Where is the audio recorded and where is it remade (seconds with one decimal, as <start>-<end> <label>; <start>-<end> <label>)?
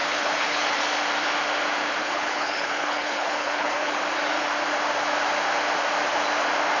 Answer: 0.0-0.8 remade; 0.8-2.0 recorded; 2.0-4.0 remade; 4.0-6.8 recorded